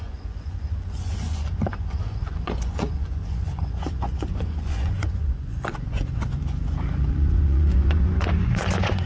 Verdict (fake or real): fake